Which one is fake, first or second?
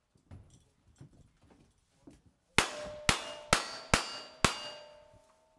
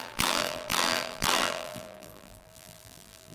second